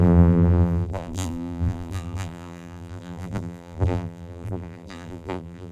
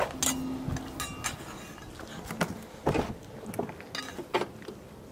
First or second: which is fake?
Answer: first